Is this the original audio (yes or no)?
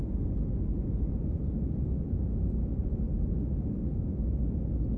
yes